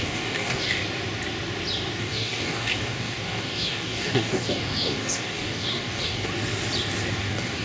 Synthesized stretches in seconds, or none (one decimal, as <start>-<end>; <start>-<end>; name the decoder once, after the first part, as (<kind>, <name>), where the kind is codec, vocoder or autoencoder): 0.0-0.8 (codec, DAC); 2.0-6.3; 7.1-7.6